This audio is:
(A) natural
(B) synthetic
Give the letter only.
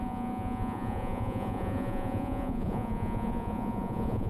B